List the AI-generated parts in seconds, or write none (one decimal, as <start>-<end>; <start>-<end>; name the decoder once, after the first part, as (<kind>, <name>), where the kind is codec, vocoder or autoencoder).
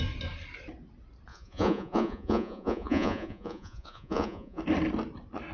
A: 1.3-4.6 (vocoder, Vocos)